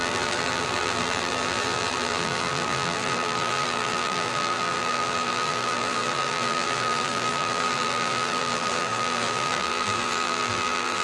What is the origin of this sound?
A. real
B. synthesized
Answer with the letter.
B